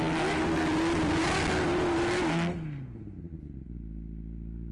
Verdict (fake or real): real